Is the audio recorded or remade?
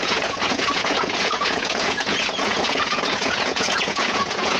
remade